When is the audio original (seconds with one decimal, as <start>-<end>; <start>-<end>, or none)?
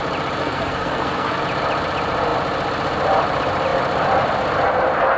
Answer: 0.0-0.4; 1.4-5.2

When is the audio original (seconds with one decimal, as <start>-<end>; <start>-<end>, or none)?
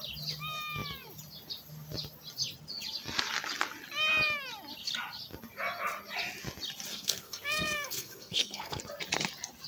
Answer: 0.0-6.9; 8.8-9.7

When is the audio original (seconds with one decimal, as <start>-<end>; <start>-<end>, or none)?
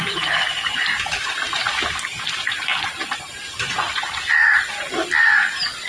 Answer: 0.0-5.9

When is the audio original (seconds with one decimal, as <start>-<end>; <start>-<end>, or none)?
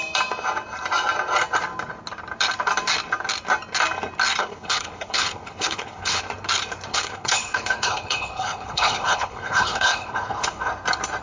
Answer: 0.0-4.4; 6.2-6.9; 10.7-11.2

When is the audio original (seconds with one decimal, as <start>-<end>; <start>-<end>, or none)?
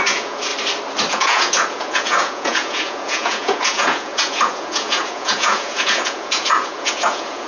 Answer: 0.5-1.1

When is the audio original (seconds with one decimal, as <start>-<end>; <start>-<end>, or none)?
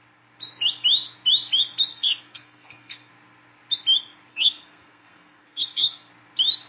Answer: 0.0-1.9; 3.1-4.3; 6.1-6.7